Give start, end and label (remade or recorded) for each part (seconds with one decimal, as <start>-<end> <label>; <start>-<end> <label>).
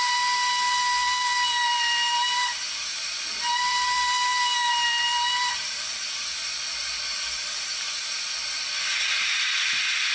0.0-10.1 remade